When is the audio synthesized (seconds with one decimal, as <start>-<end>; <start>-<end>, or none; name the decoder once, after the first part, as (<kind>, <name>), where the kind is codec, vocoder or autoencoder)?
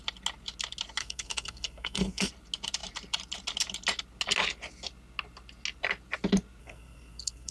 1.0-2.3 (codec, SNAC); 6.6-7.5